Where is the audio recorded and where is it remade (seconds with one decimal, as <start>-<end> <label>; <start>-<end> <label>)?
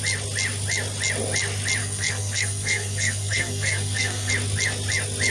0.0-1.8 recorded; 1.8-4.3 remade; 4.3-5.3 recorded